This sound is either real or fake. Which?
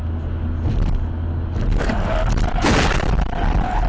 real